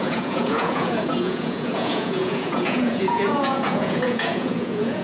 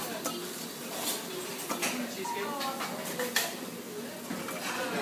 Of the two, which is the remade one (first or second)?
first